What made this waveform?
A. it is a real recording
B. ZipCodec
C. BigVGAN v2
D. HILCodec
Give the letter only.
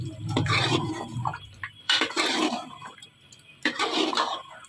C